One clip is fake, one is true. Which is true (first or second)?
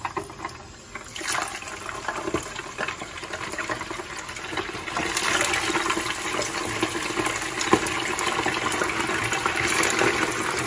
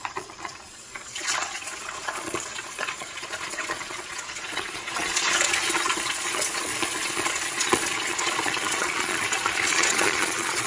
first